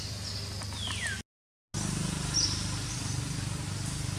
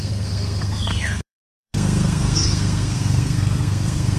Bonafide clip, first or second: first